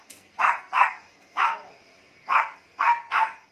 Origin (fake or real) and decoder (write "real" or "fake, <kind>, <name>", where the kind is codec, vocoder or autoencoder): fake, codec, SNAC